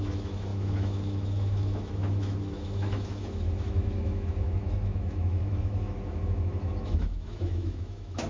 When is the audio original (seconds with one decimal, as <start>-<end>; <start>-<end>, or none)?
none